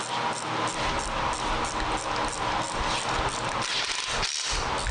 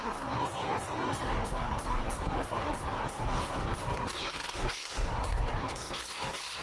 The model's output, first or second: second